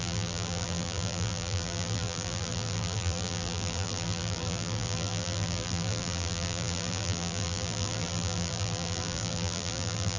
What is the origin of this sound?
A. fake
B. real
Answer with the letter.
A